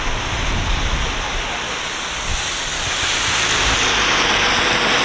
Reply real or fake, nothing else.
real